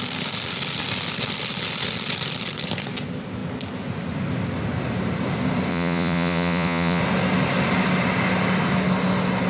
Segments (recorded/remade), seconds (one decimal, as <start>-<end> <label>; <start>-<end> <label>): 0.0-5.7 recorded; 5.7-7.0 remade; 7.0-9.5 recorded